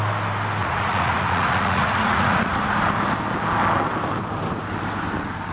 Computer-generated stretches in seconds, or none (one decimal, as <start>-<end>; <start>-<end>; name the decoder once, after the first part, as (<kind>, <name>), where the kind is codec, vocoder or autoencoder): 0.6-2.6 (vocoder, Vocos)